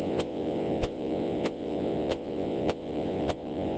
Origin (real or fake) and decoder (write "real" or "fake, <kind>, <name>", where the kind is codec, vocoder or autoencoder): fake, vocoder, Vocos